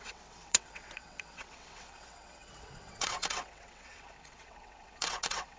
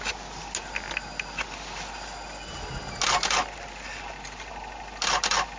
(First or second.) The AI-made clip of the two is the first